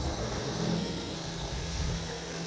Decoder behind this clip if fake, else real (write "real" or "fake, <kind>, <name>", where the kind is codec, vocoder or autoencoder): fake, codec, SNAC